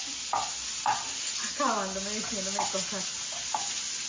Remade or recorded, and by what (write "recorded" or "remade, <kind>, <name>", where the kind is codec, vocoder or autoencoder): recorded